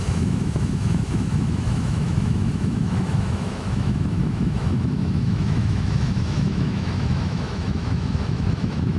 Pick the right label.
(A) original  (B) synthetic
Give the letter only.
B